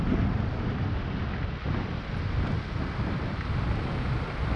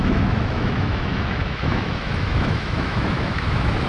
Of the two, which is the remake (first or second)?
second